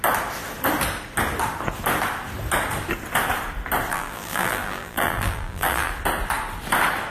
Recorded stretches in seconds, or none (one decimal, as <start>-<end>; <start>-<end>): 0.0-3.9; 5.9-7.1